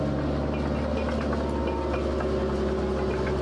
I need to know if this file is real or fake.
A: real